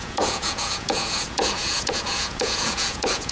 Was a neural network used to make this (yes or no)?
yes